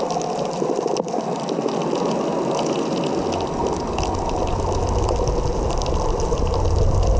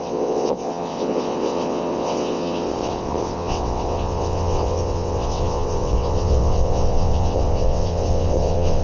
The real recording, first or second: first